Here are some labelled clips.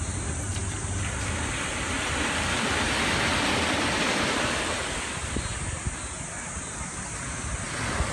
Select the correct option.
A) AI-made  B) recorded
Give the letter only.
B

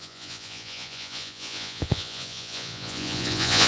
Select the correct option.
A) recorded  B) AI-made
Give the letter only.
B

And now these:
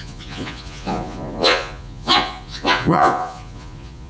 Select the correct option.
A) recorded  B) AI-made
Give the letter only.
B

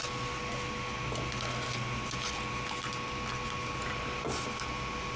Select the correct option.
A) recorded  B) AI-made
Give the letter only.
A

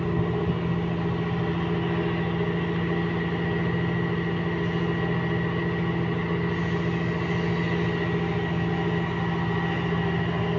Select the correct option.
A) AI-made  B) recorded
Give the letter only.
B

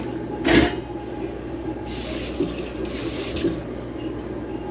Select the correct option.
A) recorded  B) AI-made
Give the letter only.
A